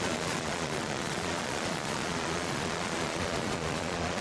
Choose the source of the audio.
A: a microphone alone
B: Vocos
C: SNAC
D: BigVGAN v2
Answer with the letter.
B